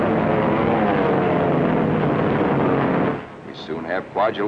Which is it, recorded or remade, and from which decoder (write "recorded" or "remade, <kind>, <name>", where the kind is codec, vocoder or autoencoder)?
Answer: recorded